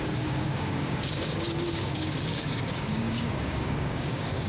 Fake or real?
fake